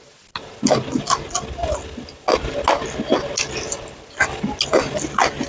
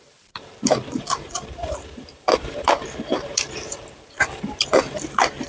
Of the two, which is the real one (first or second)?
first